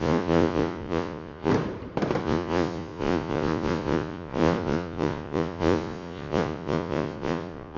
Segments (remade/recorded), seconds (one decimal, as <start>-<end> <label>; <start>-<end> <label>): 0.0-1.5 remade; 1.5-2.2 recorded; 2.2-7.8 remade